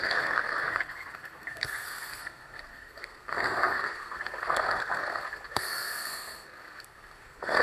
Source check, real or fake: fake